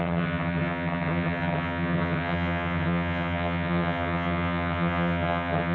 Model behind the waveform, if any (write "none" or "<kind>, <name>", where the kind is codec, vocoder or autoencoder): vocoder, HiFi-GAN